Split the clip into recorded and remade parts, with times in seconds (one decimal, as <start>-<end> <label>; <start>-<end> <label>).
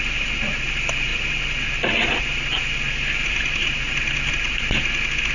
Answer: 0.0-5.3 recorded